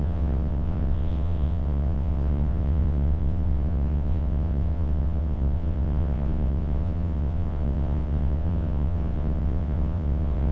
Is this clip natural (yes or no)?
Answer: no